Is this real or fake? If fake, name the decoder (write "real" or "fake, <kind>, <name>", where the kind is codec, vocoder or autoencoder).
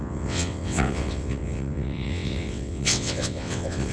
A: fake, vocoder, WaveNeXt